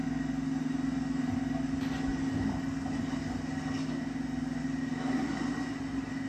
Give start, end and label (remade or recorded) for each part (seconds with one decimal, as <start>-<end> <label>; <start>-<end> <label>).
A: 0.0-6.3 recorded